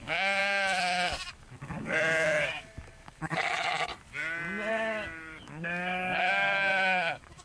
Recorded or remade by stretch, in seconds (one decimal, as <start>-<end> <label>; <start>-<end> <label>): 0.0-3.9 remade; 3.9-4.7 recorded; 4.7-7.4 remade